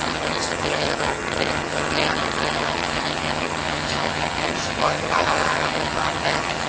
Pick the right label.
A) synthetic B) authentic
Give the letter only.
A